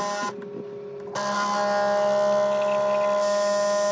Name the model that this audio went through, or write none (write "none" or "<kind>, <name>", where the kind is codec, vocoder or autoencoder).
none